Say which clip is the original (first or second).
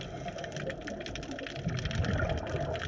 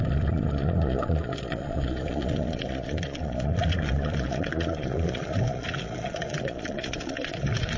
first